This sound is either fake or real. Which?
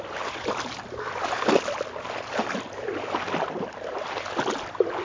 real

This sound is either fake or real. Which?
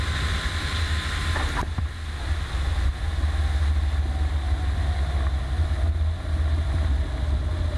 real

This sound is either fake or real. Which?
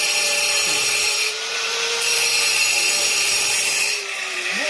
fake